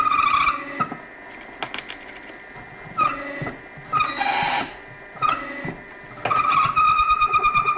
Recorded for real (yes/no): yes